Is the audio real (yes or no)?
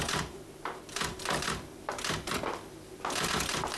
no